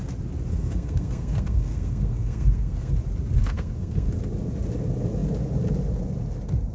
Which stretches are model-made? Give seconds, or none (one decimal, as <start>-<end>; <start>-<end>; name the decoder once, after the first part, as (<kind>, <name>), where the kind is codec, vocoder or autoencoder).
0.5-2.9 (codec, SNAC); 3.4-4.1

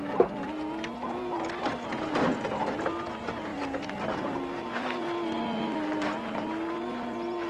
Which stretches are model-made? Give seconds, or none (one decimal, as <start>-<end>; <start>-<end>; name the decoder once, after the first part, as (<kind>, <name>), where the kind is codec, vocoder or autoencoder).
none

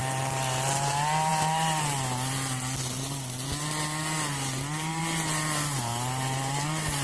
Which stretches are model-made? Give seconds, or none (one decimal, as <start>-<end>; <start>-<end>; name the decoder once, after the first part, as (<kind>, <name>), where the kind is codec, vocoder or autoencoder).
none

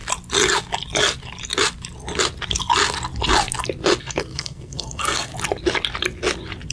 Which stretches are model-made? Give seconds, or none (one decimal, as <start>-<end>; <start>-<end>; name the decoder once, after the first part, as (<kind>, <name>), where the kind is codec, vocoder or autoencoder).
4.0-5.3 (codec, SNAC)

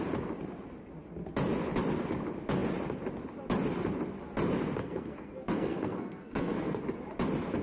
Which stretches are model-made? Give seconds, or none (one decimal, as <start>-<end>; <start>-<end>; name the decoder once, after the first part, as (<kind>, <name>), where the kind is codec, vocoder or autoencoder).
4.8-6.8 (codec, SNAC)

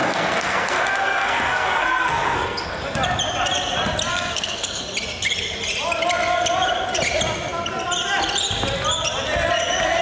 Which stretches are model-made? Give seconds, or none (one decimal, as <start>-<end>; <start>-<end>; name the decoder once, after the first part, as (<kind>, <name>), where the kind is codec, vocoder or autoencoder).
0.0-2.8 (codec, SNAC); 4.1-4.8

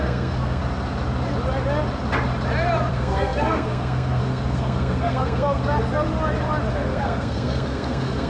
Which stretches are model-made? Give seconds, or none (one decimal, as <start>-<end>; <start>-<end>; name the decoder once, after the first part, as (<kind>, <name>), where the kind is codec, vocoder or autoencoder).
0.0-0.6 (codec, SNAC); 2.9-5.6; 6.7-8.3